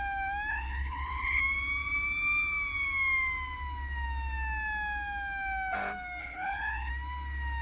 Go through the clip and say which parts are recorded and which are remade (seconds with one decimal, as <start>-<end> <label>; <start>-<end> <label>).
0.0-0.5 recorded; 0.5-1.4 remade; 1.4-6.2 recorded; 6.2-6.9 remade; 6.9-7.6 recorded